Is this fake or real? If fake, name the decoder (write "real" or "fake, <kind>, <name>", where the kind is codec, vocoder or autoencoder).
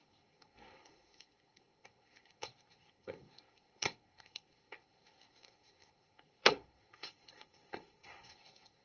fake, codec, SNAC